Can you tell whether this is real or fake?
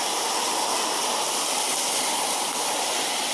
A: real